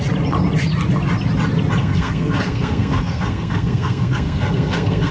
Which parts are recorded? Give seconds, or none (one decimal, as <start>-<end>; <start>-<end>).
0.0-1.8